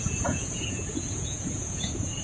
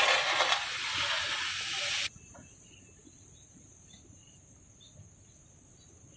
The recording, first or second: second